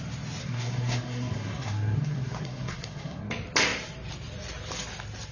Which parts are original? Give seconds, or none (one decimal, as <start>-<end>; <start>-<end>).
0.0-0.4; 3.3-5.3